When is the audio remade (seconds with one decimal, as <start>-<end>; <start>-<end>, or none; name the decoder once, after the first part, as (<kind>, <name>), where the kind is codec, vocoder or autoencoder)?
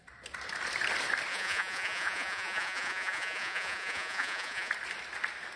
1.3-4.7 (vocoder, Vocos)